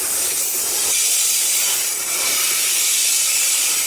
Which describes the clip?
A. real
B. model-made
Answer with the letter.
A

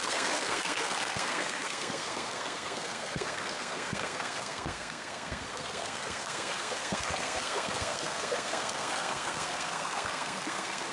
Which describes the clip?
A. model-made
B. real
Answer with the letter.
A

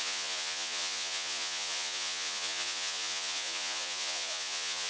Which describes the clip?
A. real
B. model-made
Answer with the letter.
B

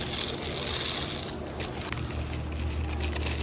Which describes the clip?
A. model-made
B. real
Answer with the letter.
B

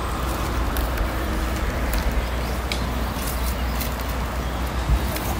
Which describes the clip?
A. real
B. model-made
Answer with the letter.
A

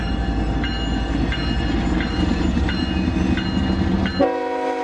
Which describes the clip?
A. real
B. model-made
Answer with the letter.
A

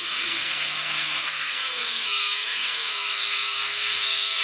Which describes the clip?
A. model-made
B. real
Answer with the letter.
A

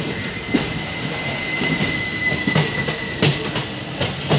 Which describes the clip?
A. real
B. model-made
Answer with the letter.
A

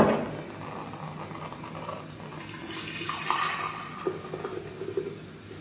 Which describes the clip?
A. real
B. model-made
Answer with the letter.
A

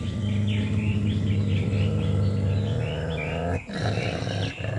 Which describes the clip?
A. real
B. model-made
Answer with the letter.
A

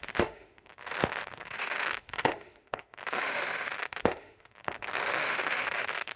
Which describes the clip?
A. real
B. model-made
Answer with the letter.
B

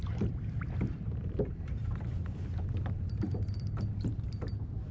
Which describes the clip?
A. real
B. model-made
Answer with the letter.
B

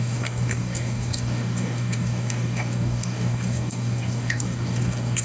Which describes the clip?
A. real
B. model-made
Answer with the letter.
B